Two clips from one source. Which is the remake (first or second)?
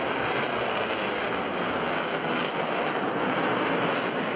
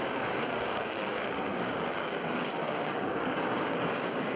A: second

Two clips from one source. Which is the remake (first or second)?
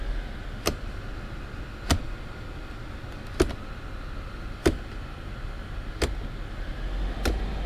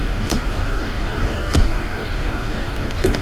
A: second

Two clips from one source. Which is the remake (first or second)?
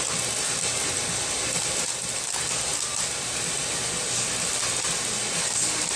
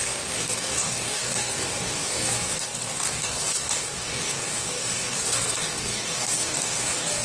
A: second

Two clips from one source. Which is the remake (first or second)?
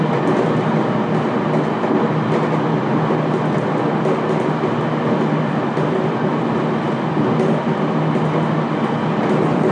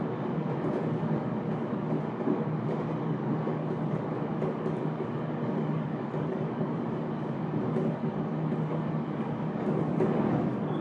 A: second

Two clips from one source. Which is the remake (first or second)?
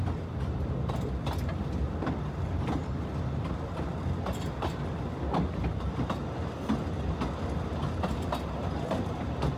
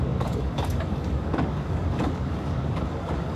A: second